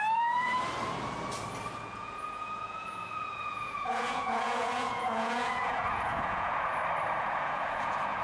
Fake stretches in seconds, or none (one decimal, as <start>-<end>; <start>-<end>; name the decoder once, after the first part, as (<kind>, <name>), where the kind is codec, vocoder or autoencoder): 0.0-0.5 (vocoder, Vocos); 1.8-6.7; 7.2-8.2